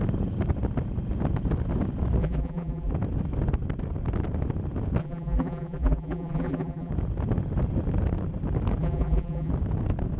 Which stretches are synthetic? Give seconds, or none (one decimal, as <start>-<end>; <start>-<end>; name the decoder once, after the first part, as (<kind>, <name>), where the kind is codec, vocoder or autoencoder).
2.2-2.9 (vocoder, BigVGAN v2); 5.0-6.9; 8.8-9.5